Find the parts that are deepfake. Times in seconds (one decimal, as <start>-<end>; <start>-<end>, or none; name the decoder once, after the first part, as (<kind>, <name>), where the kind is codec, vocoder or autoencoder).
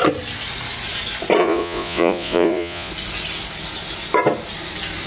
1.4-2.9 (vocoder, Vocos)